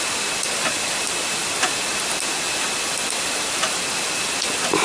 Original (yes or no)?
yes